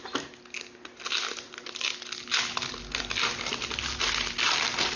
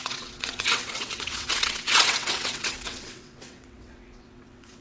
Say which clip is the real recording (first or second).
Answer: first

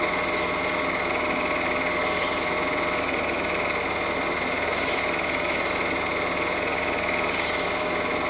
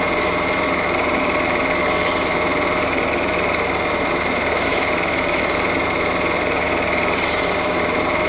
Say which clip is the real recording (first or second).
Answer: first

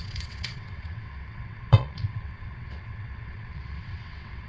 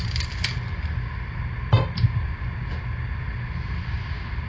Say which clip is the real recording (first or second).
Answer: second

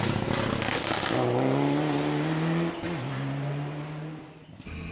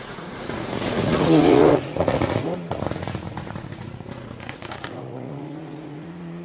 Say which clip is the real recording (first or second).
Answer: first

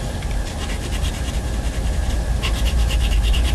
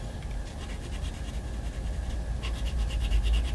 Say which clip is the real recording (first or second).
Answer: second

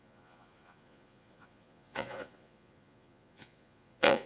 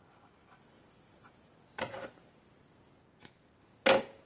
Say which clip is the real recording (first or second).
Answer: second